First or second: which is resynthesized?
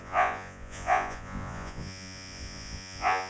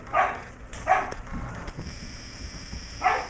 first